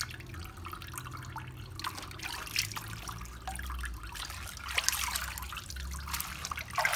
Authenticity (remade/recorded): recorded